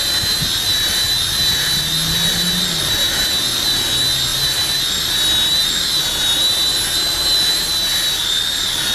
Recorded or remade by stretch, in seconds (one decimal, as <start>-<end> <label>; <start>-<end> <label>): 0.0-8.9 recorded

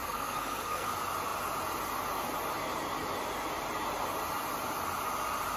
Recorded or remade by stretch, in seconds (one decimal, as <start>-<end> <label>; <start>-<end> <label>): 0.0-0.9 remade; 0.9-5.6 recorded

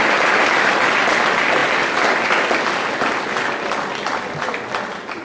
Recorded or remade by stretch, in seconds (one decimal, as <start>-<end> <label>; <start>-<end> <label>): 0.0-5.2 recorded

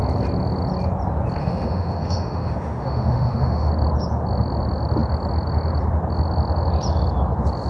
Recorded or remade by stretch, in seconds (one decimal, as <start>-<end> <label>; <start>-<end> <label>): 0.0-1.4 recorded; 1.4-3.7 remade; 3.7-7.7 recorded

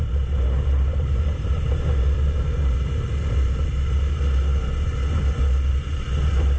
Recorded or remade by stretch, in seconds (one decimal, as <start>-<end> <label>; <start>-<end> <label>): 0.0-0.9 recorded; 0.9-3.7 remade; 3.7-6.6 recorded

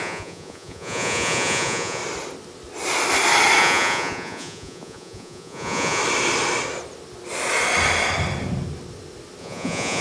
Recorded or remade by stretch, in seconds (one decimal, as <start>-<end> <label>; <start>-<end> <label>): 0.0-2.0 remade; 2.0-3.6 recorded; 3.6-6.0 remade; 6.0-9.4 recorded; 9.4-10.0 remade

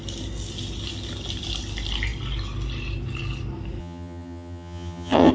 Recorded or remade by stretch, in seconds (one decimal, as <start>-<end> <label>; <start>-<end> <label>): 0.0-3.8 recorded; 3.8-5.3 remade

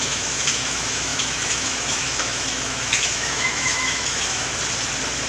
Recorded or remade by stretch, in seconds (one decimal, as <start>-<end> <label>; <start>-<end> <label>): 0.0-4.5 remade; 4.5-5.3 recorded